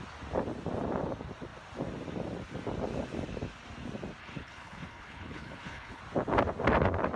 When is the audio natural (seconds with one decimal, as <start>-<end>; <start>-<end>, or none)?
0.0-4.2; 6.0-7.2